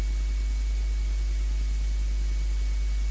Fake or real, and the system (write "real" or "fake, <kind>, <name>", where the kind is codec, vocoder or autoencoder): real